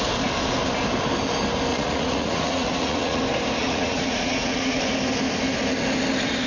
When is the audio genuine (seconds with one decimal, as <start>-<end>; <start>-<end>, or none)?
0.0-1.7; 3.2-3.6; 4.8-6.5